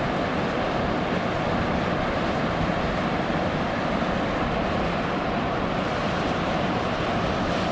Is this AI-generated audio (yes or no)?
no